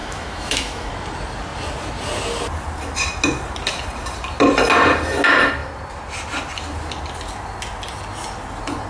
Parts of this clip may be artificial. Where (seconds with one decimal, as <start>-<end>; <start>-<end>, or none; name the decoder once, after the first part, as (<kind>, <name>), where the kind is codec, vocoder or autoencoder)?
0.0-0.9 (autoencoder, DAC-VAE)